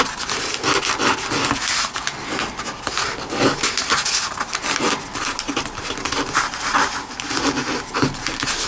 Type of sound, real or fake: real